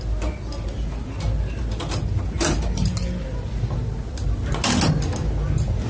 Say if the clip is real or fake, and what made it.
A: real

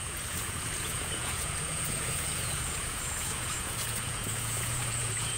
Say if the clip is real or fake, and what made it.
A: fake, vocoder, Vocos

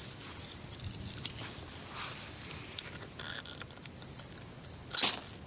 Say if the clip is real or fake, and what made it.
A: real